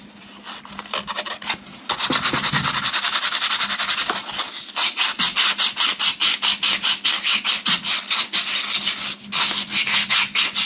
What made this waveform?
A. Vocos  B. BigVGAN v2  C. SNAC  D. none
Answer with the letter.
D